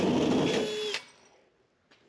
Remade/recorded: recorded